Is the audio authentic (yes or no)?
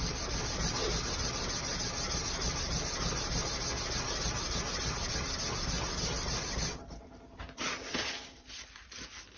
yes